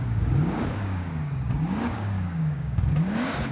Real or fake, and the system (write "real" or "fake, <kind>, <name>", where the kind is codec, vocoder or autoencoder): fake, codec, DAC